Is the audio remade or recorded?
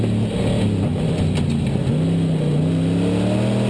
recorded